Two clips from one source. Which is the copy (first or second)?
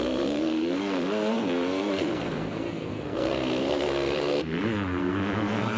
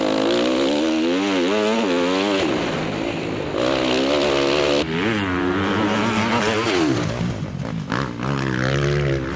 first